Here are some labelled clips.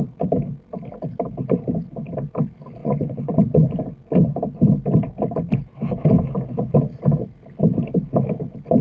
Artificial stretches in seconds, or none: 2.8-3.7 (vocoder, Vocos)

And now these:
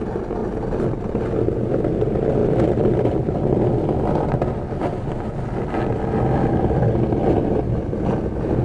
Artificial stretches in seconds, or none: 0.4-1.2 (vocoder, BigVGAN v2); 2.4-4.1; 7.2-8.2

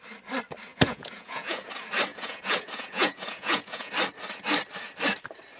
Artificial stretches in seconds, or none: 0.7-1.7 (vocoder, Vocos); 2.1-3.9

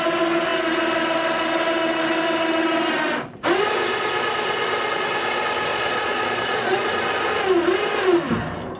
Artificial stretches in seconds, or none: 5.7-6.9 (vocoder, Vocos)